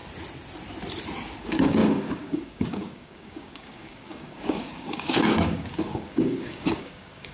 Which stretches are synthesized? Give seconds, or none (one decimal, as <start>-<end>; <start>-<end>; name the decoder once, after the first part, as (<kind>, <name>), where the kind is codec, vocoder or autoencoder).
1.4-7.3 (codec, DAC)